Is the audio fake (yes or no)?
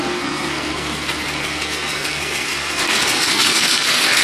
yes